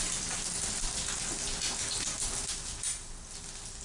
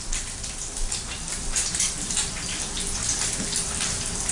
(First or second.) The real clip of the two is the first